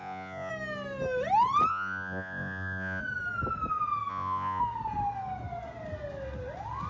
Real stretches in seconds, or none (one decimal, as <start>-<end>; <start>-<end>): 0.5-1.7; 3.0-4.1; 4.6-6.9